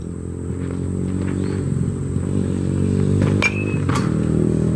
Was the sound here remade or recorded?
recorded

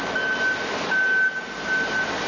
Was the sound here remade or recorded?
recorded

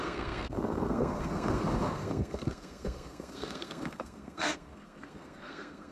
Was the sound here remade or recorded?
remade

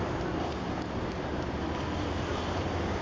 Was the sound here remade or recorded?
recorded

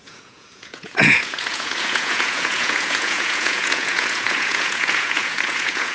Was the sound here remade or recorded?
remade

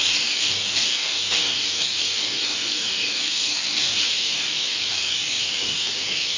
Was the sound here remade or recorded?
remade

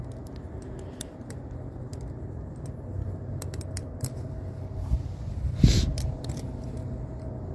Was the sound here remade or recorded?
recorded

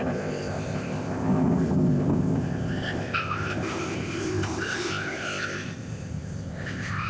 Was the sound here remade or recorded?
remade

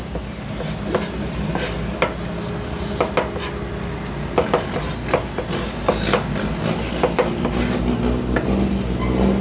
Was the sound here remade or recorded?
recorded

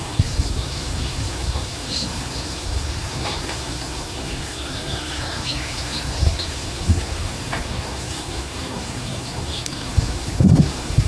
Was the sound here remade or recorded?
remade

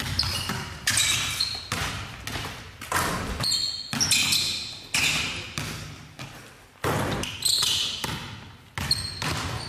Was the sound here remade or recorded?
recorded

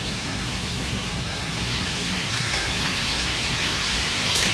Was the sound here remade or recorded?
remade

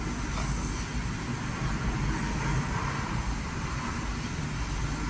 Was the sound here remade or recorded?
recorded